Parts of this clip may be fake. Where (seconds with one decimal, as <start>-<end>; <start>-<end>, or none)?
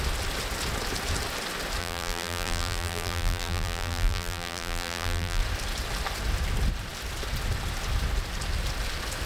1.8-5.4